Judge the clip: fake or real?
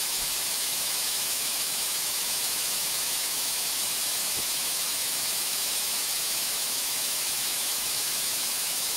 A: fake